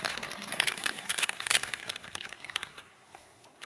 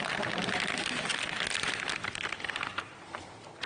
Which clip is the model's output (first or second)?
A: first